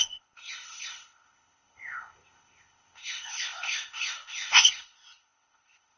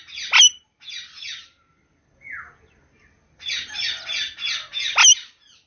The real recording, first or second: second